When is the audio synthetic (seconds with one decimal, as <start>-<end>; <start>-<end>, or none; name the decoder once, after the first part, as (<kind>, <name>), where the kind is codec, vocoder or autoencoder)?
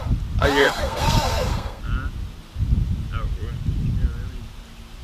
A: 0.6-1.8 (codec, SNAC)